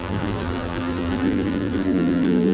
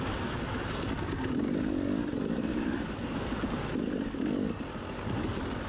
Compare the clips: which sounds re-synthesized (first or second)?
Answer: first